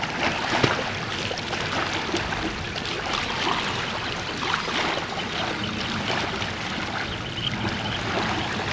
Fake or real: real